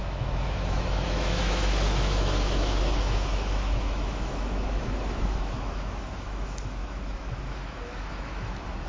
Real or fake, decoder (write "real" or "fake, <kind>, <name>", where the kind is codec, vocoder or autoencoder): fake, autoencoder, DAC-VAE